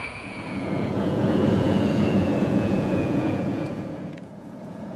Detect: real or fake fake